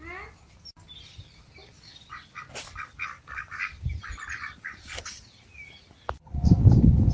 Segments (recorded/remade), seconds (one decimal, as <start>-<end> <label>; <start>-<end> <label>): 0.0-7.1 recorded